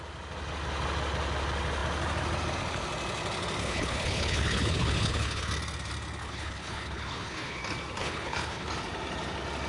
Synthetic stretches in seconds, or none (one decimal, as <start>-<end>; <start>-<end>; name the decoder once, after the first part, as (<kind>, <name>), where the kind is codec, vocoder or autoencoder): 3.6-5.5 (codec, HILCodec); 6.2-7.6; 8.0-8.7